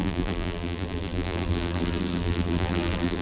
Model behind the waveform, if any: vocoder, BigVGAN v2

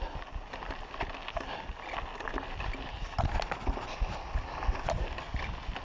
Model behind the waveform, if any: none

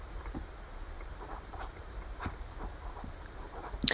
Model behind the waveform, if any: vocoder, BigVGAN v2